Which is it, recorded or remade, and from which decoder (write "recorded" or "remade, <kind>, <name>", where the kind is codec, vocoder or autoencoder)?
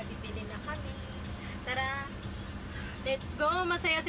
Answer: recorded